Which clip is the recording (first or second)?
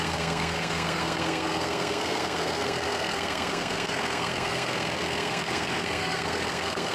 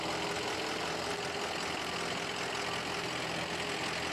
second